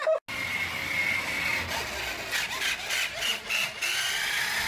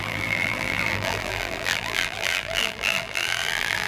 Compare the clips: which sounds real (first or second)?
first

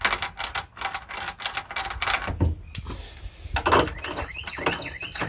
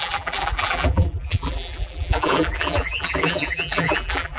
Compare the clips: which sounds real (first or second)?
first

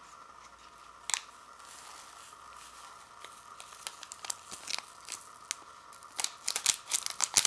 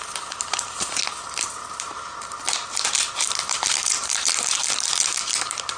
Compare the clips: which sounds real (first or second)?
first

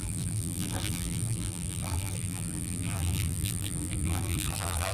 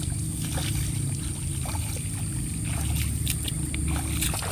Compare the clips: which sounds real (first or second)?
second